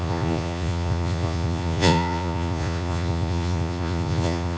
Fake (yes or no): yes